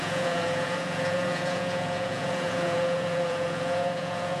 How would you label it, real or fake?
fake